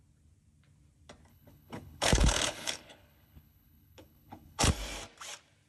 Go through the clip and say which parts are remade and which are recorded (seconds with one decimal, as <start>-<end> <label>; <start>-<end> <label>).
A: 0.0-1.3 recorded; 1.3-4.7 remade; 4.7-5.7 recorded